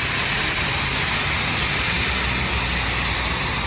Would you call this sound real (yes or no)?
yes